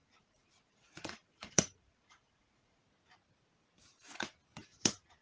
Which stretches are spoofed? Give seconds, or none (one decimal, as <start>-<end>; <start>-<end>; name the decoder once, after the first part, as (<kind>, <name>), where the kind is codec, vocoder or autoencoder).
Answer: 0.0-2.8 (vocoder, Vocos); 4.8-5.2